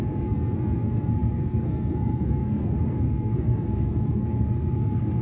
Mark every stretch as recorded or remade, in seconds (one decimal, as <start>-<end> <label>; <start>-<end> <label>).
0.0-5.2 remade

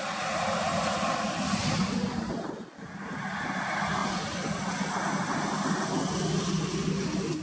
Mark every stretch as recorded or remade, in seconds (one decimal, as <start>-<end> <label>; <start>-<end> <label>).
0.0-7.4 recorded